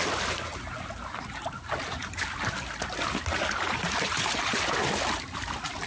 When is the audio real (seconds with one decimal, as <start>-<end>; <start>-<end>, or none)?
0.0-5.9